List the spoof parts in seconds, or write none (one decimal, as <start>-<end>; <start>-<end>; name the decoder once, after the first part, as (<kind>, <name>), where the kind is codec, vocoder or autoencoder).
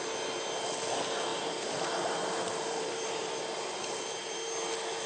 1.3-4.0 (vocoder, BigVGAN v2)